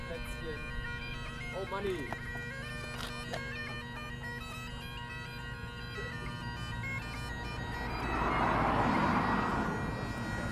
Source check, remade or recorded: recorded